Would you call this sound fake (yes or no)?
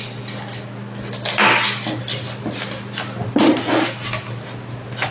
no